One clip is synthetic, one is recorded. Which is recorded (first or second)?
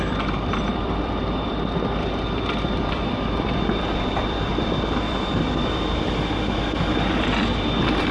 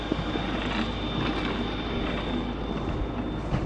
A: second